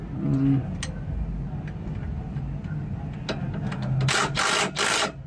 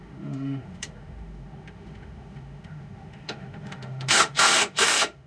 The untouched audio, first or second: first